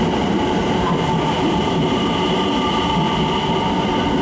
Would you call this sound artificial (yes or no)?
no